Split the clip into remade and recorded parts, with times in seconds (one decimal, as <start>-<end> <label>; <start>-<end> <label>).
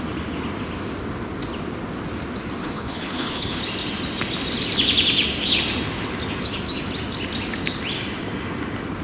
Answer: 0.0-2.6 recorded; 2.6-3.6 remade; 3.6-9.0 recorded